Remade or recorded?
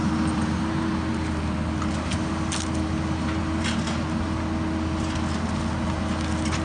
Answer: recorded